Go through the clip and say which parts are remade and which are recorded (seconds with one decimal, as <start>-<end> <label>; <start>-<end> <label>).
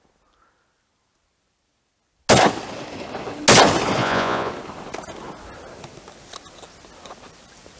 0.0-4.0 recorded; 4.0-4.5 remade; 4.5-7.8 recorded